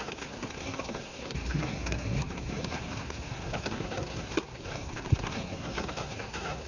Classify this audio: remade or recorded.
remade